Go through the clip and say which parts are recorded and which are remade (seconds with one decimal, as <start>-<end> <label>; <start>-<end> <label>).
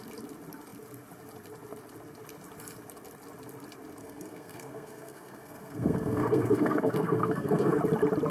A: 0.0-4.0 recorded; 4.0-7.8 remade; 7.8-8.3 recorded